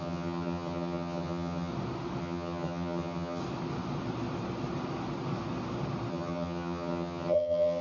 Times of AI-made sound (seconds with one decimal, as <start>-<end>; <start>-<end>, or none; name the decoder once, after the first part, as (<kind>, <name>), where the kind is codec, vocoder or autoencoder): 0.0-1.7 (vocoder, HiFi-GAN); 2.2-3.4; 6.1-7.8